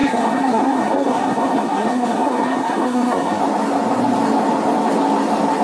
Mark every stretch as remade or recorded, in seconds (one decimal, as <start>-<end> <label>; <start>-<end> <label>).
0.0-3.4 remade; 3.4-5.6 recorded